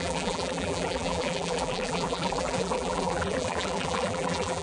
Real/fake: fake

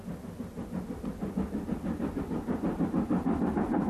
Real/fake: real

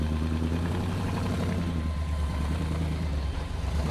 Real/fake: fake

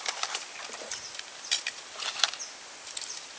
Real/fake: fake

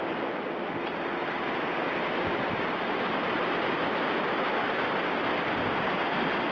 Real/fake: real